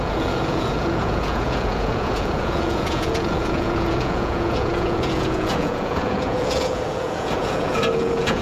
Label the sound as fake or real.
fake